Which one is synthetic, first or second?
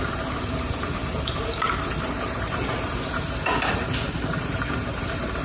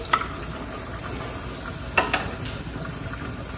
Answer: first